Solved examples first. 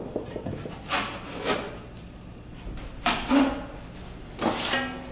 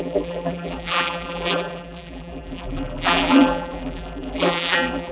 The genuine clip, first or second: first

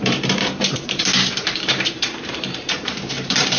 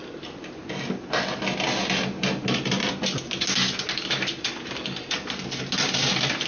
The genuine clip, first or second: second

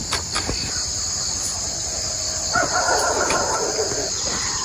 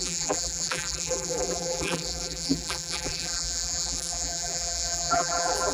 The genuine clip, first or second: first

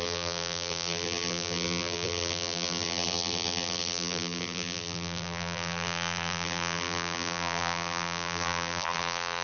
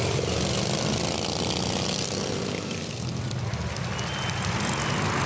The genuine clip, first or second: second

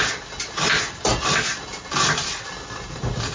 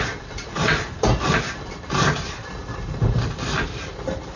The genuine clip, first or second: first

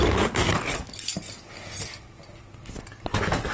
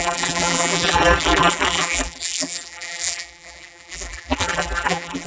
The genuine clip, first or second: first